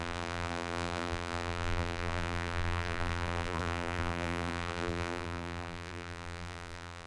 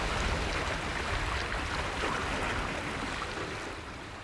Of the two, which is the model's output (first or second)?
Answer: first